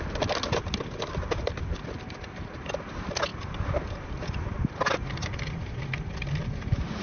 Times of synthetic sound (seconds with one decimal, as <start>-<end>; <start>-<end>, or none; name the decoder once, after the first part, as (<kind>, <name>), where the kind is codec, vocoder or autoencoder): none